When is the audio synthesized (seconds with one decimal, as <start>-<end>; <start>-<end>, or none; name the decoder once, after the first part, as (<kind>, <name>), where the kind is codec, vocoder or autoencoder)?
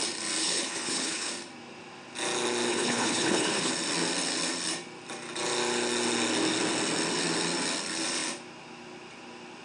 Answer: 0.4-1.3 (codec, HILCodec); 2.7-3.7